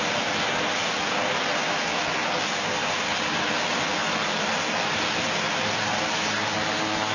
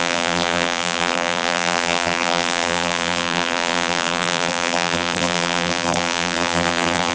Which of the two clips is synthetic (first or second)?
second